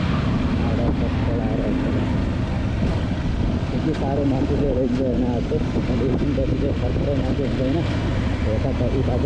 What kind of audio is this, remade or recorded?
recorded